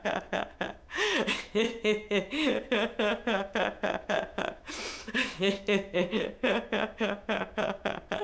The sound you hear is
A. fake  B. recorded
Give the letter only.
A